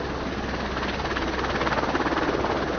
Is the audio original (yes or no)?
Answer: yes